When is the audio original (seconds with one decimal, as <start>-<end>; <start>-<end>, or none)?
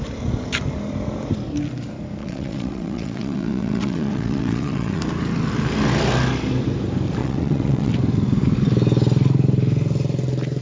0.0-2.2; 5.0-7.2; 7.9-10.6